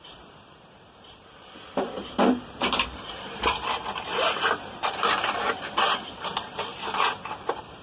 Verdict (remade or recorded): remade